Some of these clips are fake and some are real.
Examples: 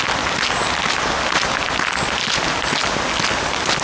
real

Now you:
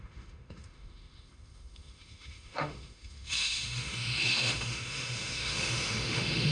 fake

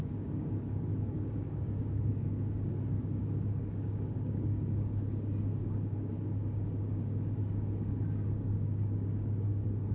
fake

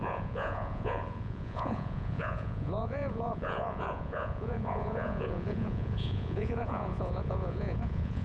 fake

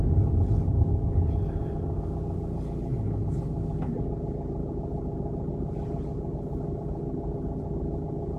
real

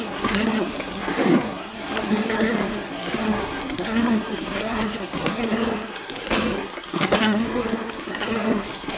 fake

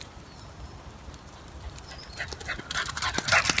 real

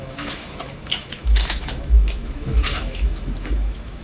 fake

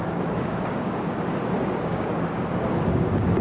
fake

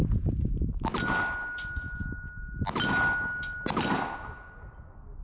real